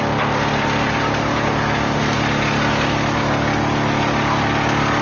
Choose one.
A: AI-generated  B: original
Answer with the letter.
B